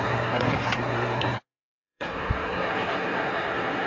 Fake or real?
fake